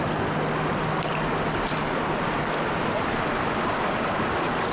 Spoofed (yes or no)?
no